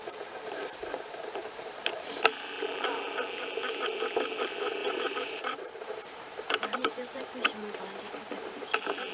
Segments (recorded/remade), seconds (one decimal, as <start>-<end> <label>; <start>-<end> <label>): 0.0-2.0 remade; 2.0-4.8 recorded; 4.8-7.8 remade; 7.8-9.1 recorded